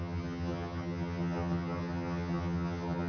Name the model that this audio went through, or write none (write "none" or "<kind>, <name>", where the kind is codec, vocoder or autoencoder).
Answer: vocoder, HiFi-GAN